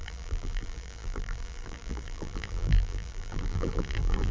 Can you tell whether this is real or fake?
fake